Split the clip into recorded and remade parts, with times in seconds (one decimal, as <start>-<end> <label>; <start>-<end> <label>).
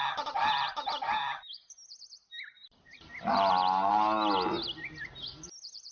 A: 0.0-5.9 recorded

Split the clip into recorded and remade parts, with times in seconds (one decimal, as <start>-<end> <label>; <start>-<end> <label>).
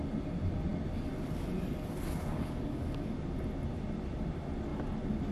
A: 0.0-2.2 recorded; 2.2-3.1 remade; 3.1-5.3 recorded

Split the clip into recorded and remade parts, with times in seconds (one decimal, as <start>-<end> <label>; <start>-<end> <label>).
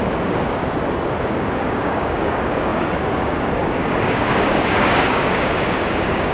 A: 0.0-0.6 remade; 0.6-1.3 recorded; 1.3-6.3 remade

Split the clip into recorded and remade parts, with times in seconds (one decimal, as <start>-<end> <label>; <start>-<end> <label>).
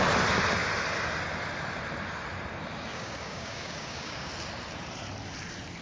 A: 0.0-2.9 recorded; 2.9-4.3 remade; 4.3-5.8 recorded